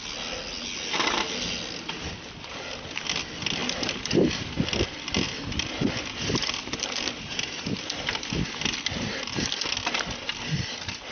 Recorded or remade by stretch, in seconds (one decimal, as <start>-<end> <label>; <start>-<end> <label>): 0.0-11.1 recorded